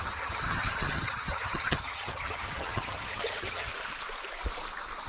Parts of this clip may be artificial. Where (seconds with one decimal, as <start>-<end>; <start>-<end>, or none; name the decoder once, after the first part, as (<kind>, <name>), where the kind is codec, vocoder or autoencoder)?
0.0-3.7 (vocoder, HiFi-GAN)